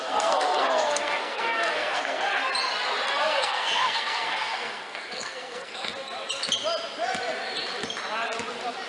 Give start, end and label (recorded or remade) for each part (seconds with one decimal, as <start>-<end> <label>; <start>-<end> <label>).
0.0-2.4 remade; 2.4-3.2 recorded; 3.2-5.9 remade; 5.9-8.9 recorded